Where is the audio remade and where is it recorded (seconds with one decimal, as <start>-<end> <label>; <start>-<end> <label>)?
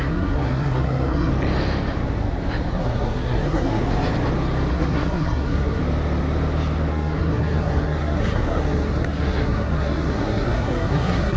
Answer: 0.0-1.3 remade; 1.3-2.7 recorded; 2.7-3.8 remade; 3.8-4.7 recorded; 4.7-5.8 remade; 5.8-6.9 recorded; 6.9-11.4 remade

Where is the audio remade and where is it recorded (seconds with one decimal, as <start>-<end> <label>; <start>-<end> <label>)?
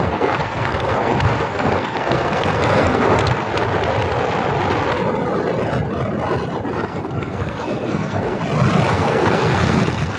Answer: 0.0-3.5 remade; 3.5-6.7 recorded; 6.7-8.4 remade; 8.4-8.9 recorded; 8.9-10.2 remade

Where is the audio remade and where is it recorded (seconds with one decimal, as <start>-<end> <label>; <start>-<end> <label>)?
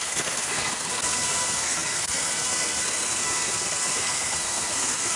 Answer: 0.0-5.2 remade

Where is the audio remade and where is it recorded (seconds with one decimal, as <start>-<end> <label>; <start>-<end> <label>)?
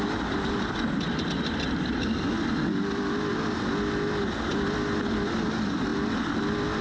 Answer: 0.0-6.8 recorded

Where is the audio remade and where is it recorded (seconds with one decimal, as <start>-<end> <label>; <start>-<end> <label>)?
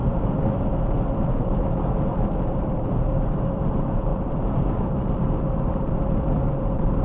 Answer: 0.0-7.0 recorded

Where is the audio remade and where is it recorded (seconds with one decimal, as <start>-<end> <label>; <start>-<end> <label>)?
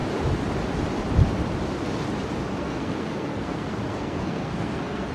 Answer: 0.0-2.5 recorded; 2.5-5.1 remade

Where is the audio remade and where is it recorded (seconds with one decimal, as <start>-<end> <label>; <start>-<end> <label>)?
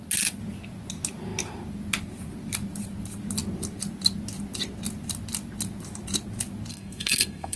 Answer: 0.0-6.7 recorded; 6.7-7.6 remade